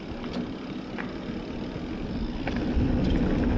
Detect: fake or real real